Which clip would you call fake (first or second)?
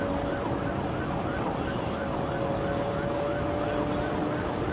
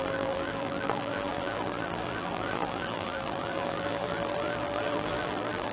second